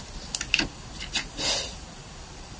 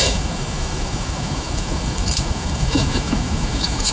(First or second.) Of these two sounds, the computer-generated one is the second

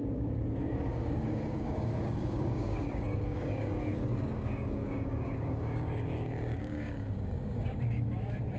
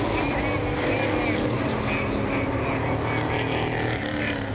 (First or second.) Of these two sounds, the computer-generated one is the first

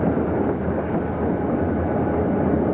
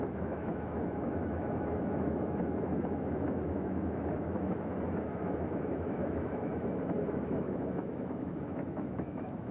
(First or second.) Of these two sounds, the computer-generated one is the second